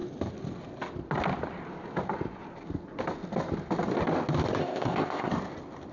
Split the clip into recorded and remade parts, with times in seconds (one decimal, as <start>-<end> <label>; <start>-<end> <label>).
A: 0.0-4.6 recorded; 4.6-5.3 remade; 5.3-5.9 recorded